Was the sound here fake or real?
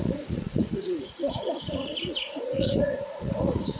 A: fake